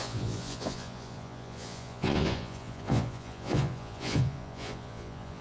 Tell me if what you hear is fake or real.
fake